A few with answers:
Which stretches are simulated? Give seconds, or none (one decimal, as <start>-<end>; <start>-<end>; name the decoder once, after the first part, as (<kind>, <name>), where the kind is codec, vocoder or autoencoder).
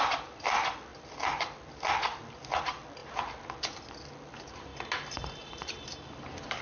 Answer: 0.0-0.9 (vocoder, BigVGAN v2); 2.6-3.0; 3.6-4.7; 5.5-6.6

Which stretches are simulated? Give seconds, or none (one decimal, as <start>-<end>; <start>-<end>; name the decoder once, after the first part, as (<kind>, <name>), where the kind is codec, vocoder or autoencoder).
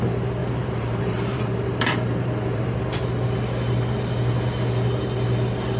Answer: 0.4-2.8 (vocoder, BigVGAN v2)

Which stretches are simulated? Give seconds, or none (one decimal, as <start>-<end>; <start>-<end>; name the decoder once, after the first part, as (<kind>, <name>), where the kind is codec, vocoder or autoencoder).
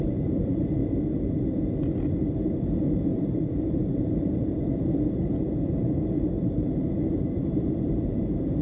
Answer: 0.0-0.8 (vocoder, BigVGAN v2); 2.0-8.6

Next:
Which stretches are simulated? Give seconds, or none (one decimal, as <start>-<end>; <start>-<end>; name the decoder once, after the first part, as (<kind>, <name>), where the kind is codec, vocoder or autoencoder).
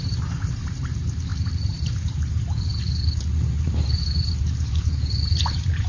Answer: 0.0-5.9 (vocoder, BigVGAN v2)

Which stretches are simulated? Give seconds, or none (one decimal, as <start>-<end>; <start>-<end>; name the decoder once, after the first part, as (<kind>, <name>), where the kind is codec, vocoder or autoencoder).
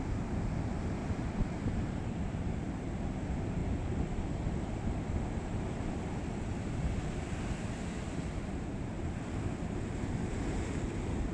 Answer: 1.0-2.9 (vocoder, BigVGAN v2); 8.7-9.3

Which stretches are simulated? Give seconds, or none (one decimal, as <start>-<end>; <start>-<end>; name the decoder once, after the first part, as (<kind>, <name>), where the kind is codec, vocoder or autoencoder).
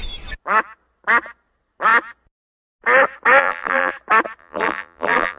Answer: 3.4-3.9 (vocoder, BigVGAN v2); 4.4-5.4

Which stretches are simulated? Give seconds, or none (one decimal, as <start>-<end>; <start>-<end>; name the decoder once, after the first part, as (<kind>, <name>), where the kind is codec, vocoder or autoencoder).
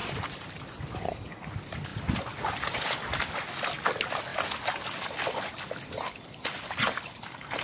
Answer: 0.0-0.6 (vocoder, BigVGAN v2)